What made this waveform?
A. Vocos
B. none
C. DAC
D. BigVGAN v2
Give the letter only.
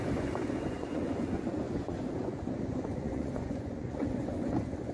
A